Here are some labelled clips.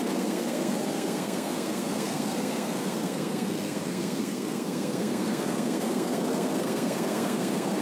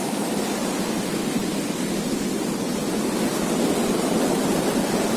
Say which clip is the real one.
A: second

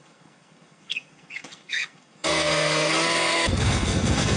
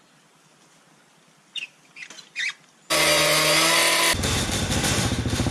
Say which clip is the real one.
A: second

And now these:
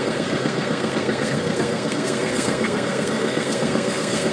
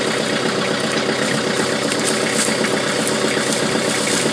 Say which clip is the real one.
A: second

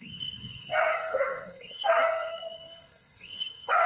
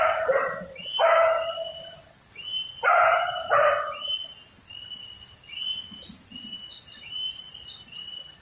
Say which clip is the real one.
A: second